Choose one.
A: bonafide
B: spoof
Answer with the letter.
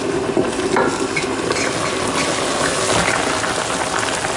A